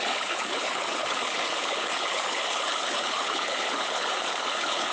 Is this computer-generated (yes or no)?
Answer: yes